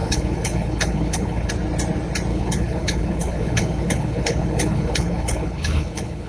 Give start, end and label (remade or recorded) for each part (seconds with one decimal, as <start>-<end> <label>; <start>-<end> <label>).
0.0-1.5 remade; 1.5-2.3 recorded; 2.3-6.3 remade

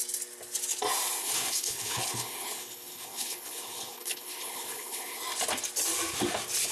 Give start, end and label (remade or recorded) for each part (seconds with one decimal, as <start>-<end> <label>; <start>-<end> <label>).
0.0-1.2 recorded; 1.2-5.2 remade; 5.2-6.7 recorded

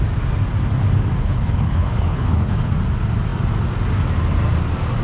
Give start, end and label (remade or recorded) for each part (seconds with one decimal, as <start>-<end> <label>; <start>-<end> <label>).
0.0-1.2 recorded; 1.2-2.7 remade; 2.7-5.0 recorded

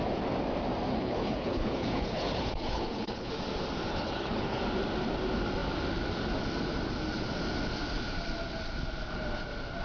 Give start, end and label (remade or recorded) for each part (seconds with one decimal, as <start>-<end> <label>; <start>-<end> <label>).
0.0-0.9 recorded; 0.9-3.3 remade; 3.3-3.9 recorded; 3.9-4.6 remade; 4.6-9.8 recorded

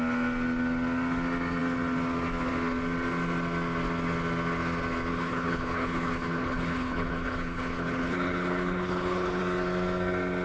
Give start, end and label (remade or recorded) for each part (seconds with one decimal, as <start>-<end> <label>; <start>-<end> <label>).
0.0-5.1 recorded; 5.1-9.4 remade; 9.4-10.4 recorded